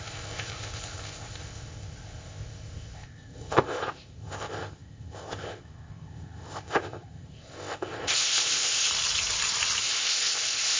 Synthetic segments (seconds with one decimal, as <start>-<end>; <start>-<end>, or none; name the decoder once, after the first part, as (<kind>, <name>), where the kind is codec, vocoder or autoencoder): 0.0-8.9 (codec, ZipCodec); 9.8-10.8